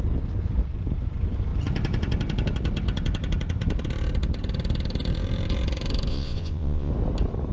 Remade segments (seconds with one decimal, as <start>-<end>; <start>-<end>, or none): 6.1-6.9